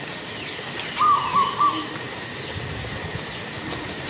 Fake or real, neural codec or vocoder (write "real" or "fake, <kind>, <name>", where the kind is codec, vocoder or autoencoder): real